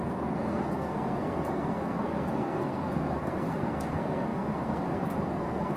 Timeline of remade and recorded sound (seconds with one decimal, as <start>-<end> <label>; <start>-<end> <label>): 0.0-5.8 remade